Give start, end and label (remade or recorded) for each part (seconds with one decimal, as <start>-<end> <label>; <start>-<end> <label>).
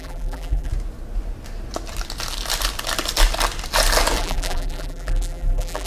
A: 0.0-0.7 remade; 0.7-4.2 recorded; 4.2-5.9 remade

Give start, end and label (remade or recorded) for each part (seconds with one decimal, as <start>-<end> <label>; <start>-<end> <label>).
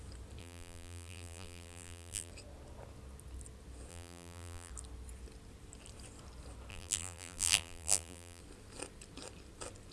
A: 0.0-0.4 recorded; 0.4-2.3 remade; 2.3-3.9 recorded; 3.9-4.7 remade; 4.7-6.7 recorded; 6.7-8.4 remade; 8.4-9.9 recorded